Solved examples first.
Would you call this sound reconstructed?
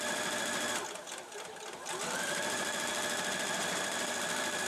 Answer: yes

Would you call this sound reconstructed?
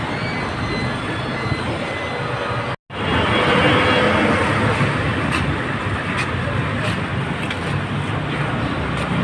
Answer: no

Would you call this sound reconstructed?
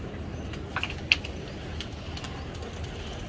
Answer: no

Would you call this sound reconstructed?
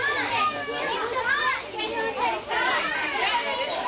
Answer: no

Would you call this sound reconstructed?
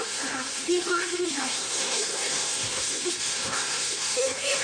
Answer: yes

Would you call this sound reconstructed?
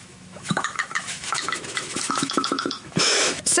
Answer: yes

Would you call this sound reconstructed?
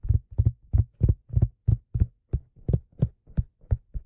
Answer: no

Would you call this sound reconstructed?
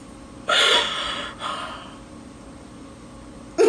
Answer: no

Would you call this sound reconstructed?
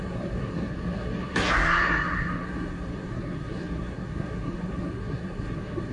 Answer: yes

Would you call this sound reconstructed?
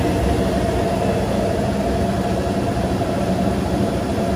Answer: no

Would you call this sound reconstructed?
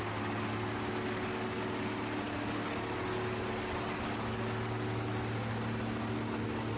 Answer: no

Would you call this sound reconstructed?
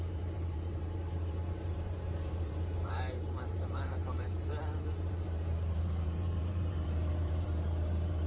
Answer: yes